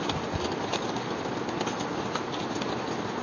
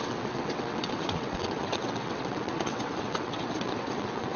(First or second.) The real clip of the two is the first